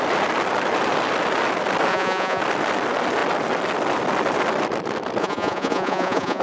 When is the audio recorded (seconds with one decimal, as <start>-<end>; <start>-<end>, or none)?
0.0-1.9; 2.4-5.2